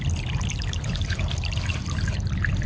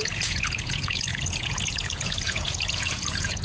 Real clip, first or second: first